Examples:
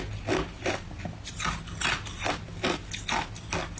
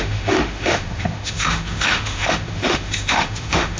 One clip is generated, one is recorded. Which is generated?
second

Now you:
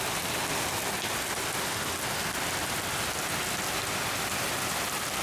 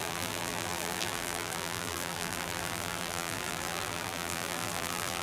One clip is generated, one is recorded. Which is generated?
second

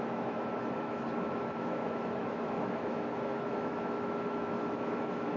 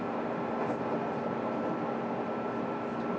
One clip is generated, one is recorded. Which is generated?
first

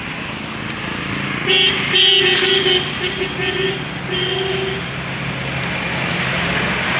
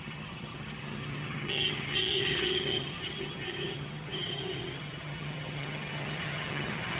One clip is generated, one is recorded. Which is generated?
second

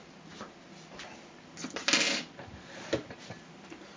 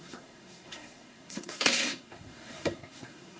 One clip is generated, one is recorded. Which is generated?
second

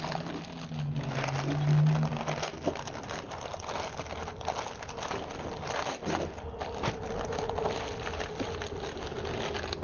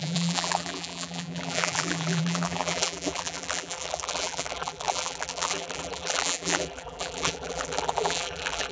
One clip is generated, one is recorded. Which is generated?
second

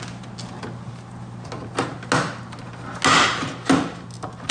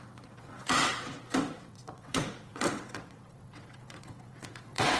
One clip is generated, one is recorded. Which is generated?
second